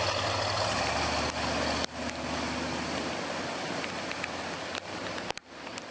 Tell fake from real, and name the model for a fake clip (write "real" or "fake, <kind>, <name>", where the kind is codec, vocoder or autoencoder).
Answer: real